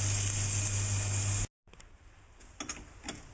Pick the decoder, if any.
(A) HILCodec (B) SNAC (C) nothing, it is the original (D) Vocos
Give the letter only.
C